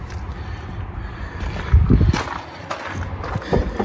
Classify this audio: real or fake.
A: real